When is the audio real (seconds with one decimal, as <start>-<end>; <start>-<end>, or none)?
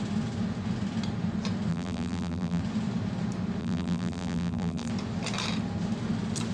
0.0-1.7; 2.6-3.6; 4.9-6.5